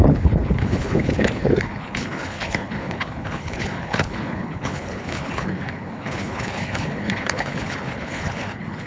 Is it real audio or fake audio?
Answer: fake